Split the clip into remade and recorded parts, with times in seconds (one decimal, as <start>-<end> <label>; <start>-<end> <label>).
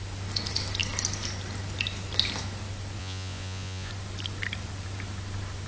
0.0-3.0 recorded; 3.0-3.9 remade; 3.9-5.7 recorded